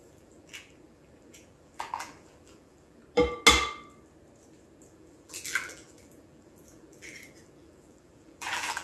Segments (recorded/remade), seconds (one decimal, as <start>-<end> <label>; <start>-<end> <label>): 0.0-3.0 remade; 3.0-4.8 recorded; 4.8-8.8 remade